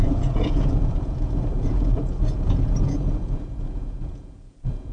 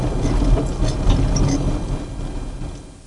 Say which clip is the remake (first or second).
first